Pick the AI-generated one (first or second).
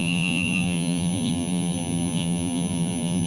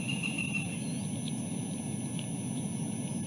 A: first